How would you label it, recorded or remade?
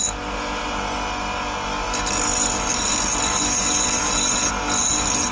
recorded